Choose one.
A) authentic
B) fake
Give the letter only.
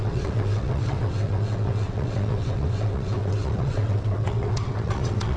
B